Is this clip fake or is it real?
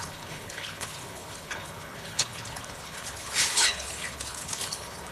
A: fake